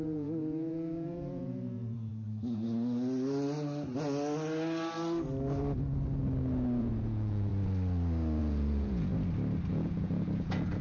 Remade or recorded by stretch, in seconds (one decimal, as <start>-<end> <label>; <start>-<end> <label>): 0.0-2.1 remade; 2.1-6.8 recorded; 6.8-7.5 remade; 7.5-8.4 recorded; 8.4-9.1 remade; 9.1-9.7 recorded; 9.7-10.8 remade

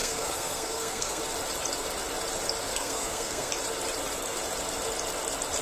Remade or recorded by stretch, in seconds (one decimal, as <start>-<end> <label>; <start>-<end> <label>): 0.0-1.2 remade; 1.2-2.7 recorded; 2.7-3.5 remade; 3.5-5.6 recorded

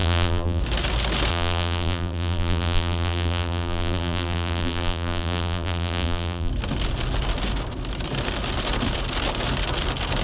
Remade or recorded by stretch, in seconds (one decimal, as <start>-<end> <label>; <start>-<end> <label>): 0.0-0.6 remade; 0.6-1.3 recorded; 1.3-6.5 remade; 6.5-10.2 recorded

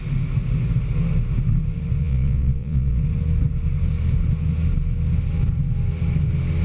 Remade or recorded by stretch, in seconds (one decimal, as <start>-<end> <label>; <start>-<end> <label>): 0.0-2.0 recorded; 2.0-3.0 remade; 3.0-6.6 recorded